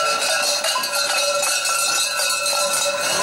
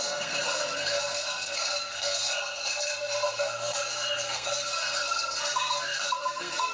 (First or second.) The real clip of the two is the first